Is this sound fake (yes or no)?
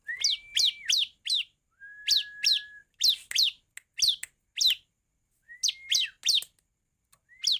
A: no